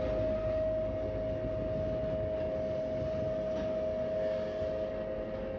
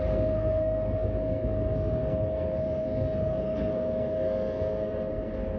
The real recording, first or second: first